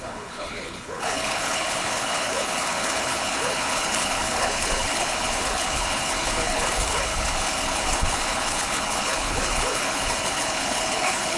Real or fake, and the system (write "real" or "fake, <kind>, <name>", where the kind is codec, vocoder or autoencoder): fake, codec, HILCodec